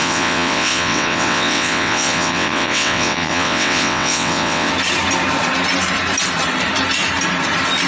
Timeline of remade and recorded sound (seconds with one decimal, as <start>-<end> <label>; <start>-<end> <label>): 0.0-4.7 remade; 4.7-7.9 recorded